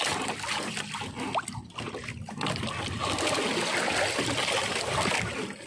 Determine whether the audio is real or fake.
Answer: real